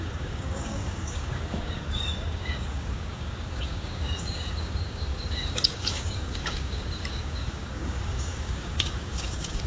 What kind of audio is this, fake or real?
fake